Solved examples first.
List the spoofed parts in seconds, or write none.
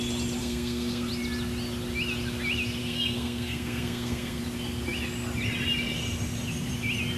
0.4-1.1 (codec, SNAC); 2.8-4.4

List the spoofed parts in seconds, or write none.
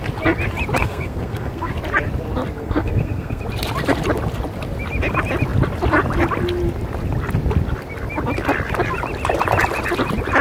0.8-1.7 (codec, SNAC); 2.6-3.4